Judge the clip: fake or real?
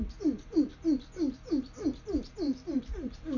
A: real